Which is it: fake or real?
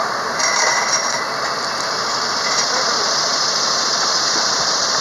real